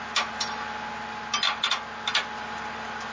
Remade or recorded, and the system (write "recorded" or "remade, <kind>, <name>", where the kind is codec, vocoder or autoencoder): recorded